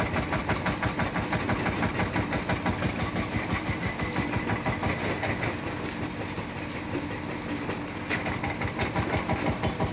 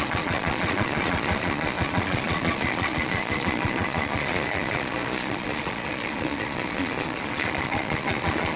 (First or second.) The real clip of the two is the first